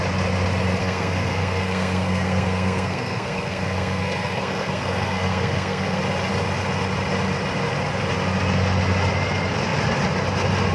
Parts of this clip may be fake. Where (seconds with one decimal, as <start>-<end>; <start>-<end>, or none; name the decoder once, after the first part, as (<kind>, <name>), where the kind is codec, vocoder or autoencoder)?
0.8-6.0 (codec, SNAC)